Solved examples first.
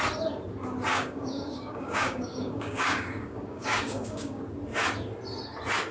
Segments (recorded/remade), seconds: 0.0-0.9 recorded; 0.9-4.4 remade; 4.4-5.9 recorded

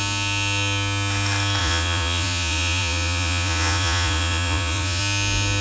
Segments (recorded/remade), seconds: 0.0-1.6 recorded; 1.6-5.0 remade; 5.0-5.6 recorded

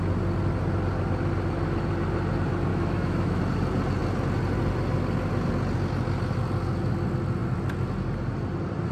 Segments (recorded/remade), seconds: 0.0-2.7 recorded; 2.7-3.4 remade; 3.4-8.9 recorded

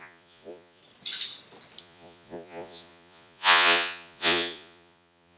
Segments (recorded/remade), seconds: 0.0-0.8 remade; 0.8-1.8 recorded; 1.8-5.4 remade